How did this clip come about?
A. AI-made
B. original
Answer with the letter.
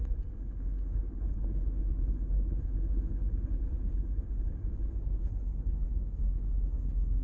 A